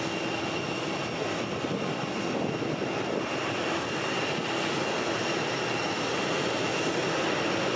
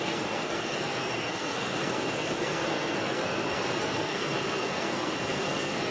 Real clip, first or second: first